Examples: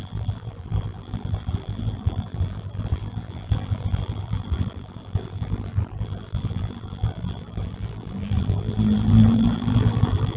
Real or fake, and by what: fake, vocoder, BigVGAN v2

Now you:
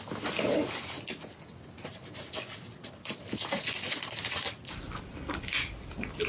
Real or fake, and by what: real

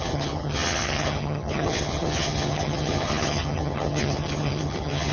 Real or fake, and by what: fake, vocoder, HiFi-GAN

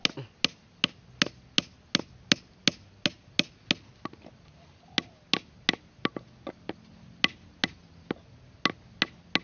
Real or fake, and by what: real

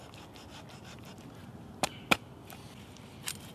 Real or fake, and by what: real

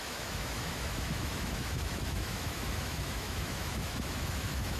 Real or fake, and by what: fake, autoencoder, DAC-VAE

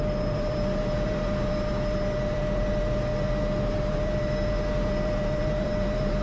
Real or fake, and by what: fake, vocoder, BigVGAN v2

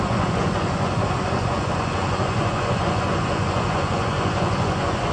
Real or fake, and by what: fake, vocoder, Vocos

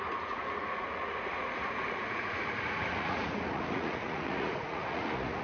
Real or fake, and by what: fake, vocoder, Vocos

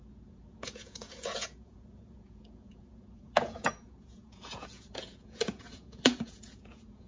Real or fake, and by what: fake, vocoder, Vocos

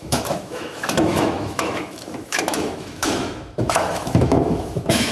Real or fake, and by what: fake, autoencoder, DAC-VAE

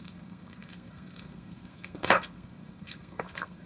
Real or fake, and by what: fake, codec, SNAC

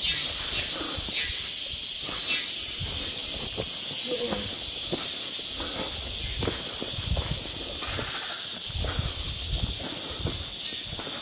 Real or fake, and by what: real